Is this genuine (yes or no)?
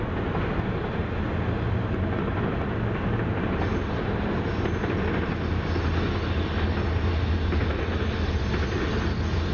yes